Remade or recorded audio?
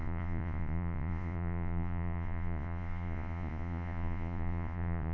remade